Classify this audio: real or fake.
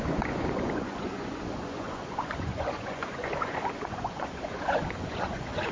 fake